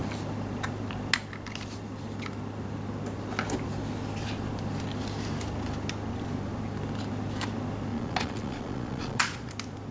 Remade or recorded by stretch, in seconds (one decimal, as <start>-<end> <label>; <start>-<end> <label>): 0.0-7.9 recorded; 7.9-9.5 remade; 9.5-9.9 recorded